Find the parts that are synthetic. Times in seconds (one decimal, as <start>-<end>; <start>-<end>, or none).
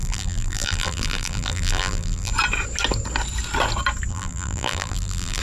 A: 0.0-2.3; 4.1-5.4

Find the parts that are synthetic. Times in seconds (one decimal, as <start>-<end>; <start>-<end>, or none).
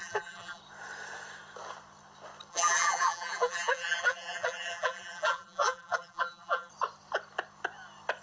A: 0.0-0.6; 2.5-6.7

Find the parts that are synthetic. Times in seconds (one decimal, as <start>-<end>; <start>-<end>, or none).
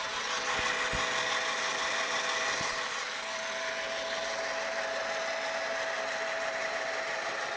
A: 1.7-2.7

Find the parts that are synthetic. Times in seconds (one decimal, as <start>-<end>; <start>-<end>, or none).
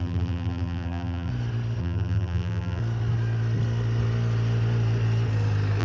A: 0.0-1.3; 1.8-2.8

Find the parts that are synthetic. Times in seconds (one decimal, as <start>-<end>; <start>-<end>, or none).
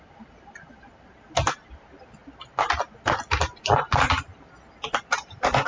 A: 0.0-2.2; 3.3-4.3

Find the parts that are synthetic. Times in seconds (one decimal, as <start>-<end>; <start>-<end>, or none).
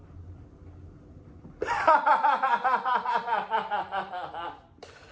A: 2.1-5.1